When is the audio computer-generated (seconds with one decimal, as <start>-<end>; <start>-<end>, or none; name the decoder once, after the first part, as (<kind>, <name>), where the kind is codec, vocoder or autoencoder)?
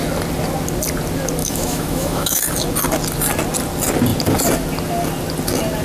1.4-2.4 (autoencoder, DAC-VAE)